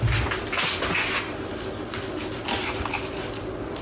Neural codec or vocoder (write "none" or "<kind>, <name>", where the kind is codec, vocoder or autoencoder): none